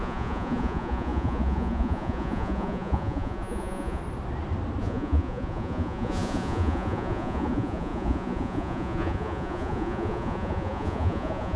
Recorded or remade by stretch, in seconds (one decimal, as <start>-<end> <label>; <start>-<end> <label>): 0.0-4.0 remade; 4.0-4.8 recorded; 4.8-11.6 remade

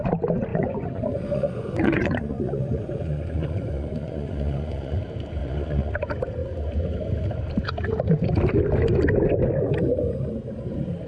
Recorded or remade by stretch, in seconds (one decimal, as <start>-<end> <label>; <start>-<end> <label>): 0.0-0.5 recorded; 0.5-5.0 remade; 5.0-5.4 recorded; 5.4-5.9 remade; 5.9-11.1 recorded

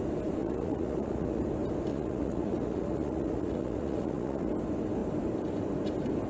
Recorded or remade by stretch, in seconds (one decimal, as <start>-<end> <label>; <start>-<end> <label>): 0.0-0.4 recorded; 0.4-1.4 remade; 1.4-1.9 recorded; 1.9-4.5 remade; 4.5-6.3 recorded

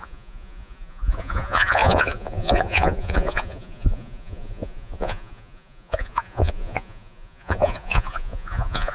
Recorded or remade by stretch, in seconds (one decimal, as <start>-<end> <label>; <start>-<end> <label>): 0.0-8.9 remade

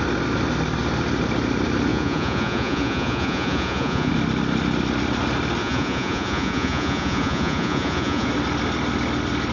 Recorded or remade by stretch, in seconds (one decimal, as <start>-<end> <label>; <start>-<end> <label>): 0.0-1.9 recorded; 1.9-4.1 remade; 4.1-5.6 recorded; 5.6-8.3 remade; 8.3-9.5 recorded

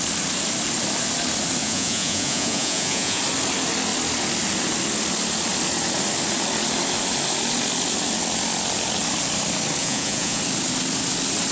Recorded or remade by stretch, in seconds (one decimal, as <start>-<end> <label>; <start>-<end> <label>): 0.0-1.6 recorded; 1.6-3.2 remade; 3.2-9.8 recorded; 9.8-10.4 remade; 10.4-11.5 recorded

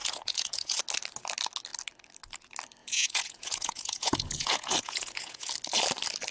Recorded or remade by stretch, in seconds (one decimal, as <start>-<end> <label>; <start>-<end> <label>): 0.0-0.8 remade; 0.8-2.8 recorded; 2.8-5.5 remade; 5.5-6.3 recorded